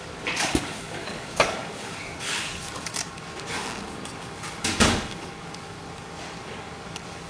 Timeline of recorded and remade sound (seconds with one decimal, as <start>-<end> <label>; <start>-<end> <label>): 0.0-7.3 remade